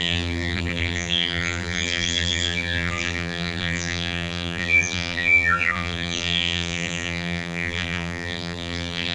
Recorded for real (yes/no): no